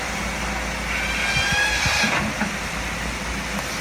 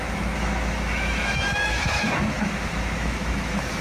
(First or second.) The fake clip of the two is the second